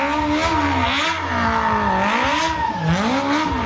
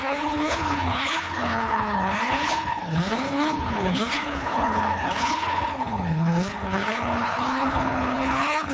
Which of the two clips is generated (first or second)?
second